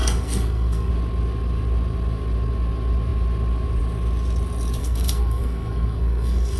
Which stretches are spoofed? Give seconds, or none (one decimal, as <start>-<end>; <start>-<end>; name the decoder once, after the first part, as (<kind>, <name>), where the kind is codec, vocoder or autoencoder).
0.0-0.9 (codec, SNAC); 4.8-6.6